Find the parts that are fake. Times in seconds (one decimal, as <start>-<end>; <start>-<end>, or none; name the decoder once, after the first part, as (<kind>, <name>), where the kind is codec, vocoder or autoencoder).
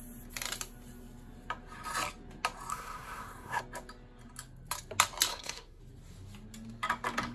2.7-3.6 (codec, SNAC); 5.3-5.8